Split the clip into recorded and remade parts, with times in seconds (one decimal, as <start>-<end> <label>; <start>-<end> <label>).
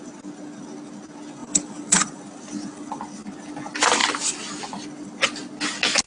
0.0-1.4 recorded; 1.4-3.0 remade; 3.0-4.0 recorded; 4.0-4.6 remade; 4.6-6.1 recorded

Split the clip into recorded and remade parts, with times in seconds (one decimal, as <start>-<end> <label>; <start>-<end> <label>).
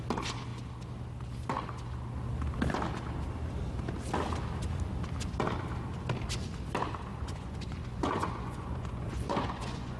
0.0-7.1 recorded; 7.1-10.0 remade